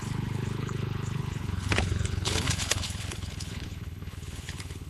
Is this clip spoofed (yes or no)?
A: yes